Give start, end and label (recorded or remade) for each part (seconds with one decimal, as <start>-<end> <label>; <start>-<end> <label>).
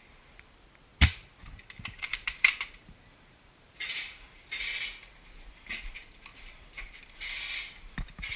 0.0-0.9 recorded; 0.9-4.5 remade; 4.5-8.4 recorded